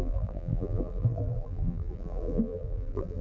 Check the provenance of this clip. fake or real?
fake